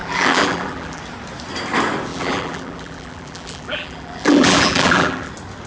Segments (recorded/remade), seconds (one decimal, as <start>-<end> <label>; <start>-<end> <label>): 0.0-1.0 remade; 1.0-2.1 recorded; 2.1-5.3 remade; 5.3-5.7 recorded